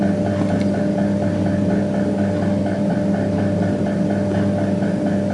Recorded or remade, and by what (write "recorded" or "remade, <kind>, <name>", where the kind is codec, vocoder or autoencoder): recorded